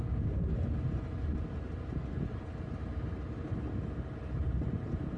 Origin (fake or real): real